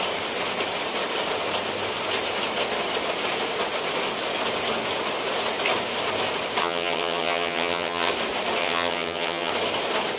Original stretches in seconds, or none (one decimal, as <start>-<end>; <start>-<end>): 0.0-6.6; 8.1-8.6; 9.5-10.2